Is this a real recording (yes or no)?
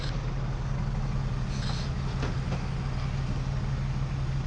yes